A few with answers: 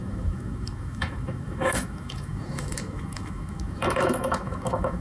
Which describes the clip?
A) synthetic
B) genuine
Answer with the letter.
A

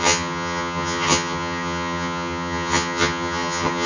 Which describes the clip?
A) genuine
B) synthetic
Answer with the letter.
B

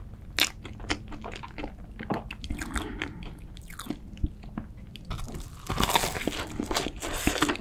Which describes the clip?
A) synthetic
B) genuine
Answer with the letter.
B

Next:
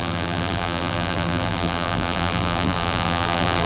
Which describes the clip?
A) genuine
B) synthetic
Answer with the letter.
B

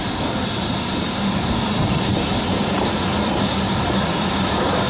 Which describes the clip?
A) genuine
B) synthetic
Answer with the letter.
B